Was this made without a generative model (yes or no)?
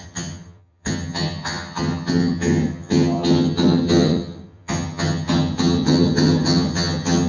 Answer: no